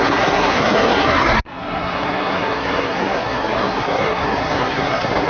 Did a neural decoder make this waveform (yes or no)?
yes